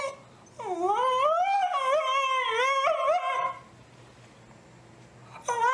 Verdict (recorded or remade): recorded